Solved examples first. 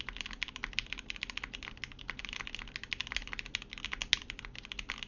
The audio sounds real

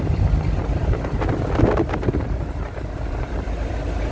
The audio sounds fake